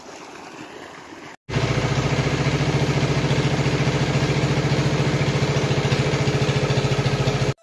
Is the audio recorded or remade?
recorded